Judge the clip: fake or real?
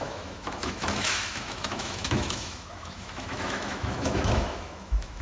fake